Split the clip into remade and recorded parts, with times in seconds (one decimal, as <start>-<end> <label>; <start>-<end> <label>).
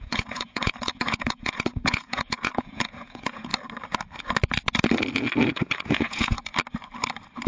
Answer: 0.0-3.5 remade; 3.5-5.5 recorded; 5.5-6.5 remade; 6.5-7.5 recorded